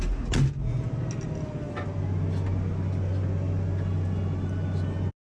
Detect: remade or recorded recorded